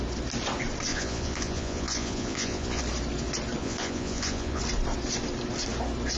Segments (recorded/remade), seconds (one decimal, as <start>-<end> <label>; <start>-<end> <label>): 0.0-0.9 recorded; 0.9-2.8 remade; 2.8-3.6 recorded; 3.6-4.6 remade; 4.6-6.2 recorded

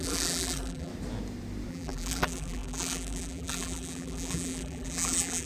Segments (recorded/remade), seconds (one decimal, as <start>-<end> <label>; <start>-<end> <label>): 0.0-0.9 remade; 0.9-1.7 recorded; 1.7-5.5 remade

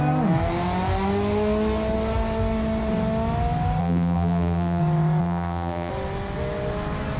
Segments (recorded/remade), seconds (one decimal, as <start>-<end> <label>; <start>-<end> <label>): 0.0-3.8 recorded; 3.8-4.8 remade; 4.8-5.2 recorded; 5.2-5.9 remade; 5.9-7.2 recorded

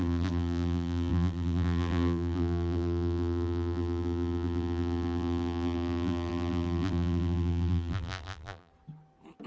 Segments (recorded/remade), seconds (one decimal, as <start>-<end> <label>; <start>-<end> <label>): 0.0-8.7 remade; 8.7-9.5 recorded

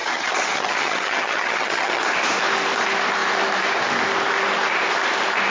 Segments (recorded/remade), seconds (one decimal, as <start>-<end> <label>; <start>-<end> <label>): 0.0-2.0 remade; 2.0-5.5 recorded

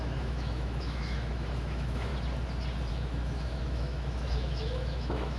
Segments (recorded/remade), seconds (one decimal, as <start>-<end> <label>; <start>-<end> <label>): 0.0-2.1 remade; 2.1-2.9 recorded; 2.9-5.4 remade

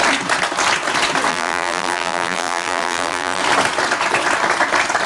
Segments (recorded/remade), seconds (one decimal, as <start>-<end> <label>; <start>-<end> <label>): 0.0-1.3 recorded; 1.3-3.4 remade; 3.4-5.1 recorded

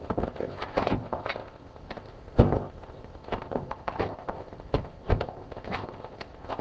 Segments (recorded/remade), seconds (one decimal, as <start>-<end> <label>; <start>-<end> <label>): 0.0-6.6 remade